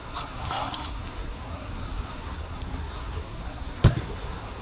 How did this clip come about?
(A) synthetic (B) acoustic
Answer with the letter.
A